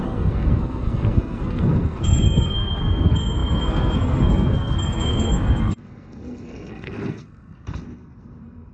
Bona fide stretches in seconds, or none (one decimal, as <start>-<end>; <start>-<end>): none